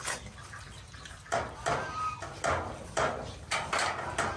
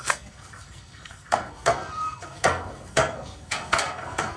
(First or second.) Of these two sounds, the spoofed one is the second